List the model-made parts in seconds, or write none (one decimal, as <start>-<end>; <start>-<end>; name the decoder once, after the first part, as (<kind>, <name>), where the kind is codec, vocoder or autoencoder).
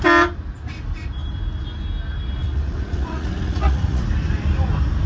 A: 2.4-4.0 (vocoder, Vocos)